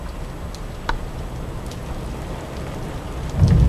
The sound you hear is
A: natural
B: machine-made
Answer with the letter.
A